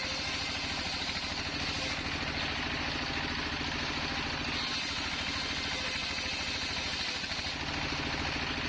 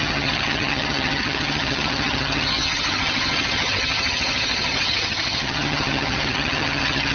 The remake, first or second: second